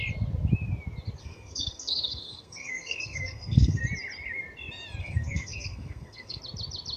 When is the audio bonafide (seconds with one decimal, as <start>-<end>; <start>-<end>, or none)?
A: 0.0-1.2; 3.8-5.0; 6.4-7.0